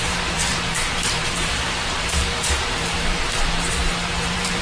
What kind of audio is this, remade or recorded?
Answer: remade